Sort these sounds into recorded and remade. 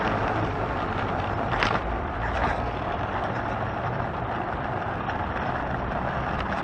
remade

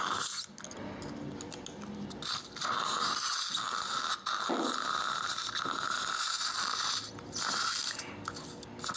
recorded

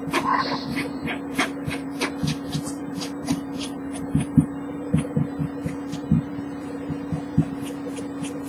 remade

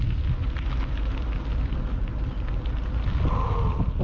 recorded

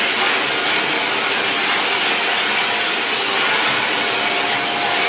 recorded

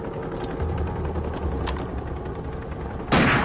recorded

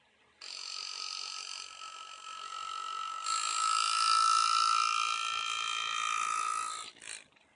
recorded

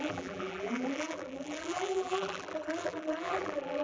remade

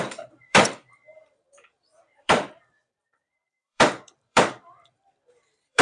remade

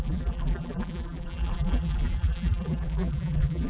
remade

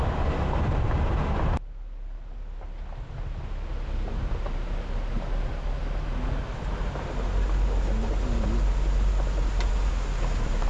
recorded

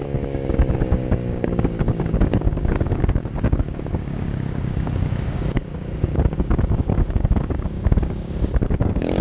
remade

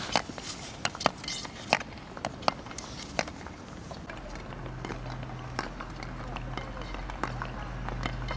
recorded